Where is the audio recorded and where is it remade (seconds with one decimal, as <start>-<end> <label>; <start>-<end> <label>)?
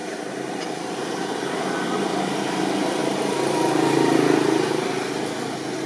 0.0-0.6 remade; 0.6-5.9 recorded